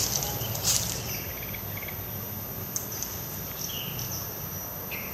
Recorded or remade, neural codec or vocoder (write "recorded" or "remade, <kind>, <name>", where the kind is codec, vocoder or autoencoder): recorded